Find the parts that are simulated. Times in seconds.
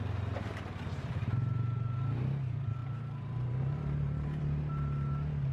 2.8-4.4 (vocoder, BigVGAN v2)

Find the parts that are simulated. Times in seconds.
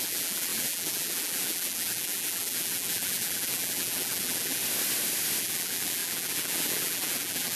0.0-4.6 (vocoder, BigVGAN v2); 5.4-7.6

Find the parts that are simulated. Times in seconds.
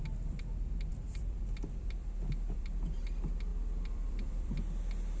0.9-3.0 (vocoder, BigVGAN v2); 3.5-4.5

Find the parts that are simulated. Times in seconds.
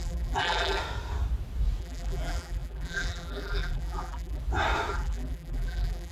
0.0-0.8 (vocoder, BigVGAN v2); 1.8-4.4; 4.9-6.1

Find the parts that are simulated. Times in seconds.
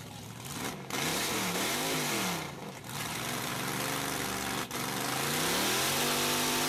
1.1-2.1 (vocoder, BigVGAN v2); 2.6-3.5